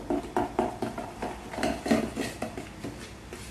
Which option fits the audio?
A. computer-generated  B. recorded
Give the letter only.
B